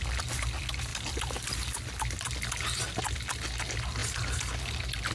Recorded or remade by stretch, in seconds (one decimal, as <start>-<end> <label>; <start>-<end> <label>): 0.0-5.1 recorded